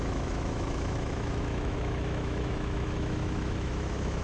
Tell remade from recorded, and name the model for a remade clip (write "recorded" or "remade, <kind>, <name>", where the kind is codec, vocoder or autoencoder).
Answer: remade, autoencoder, DAC-VAE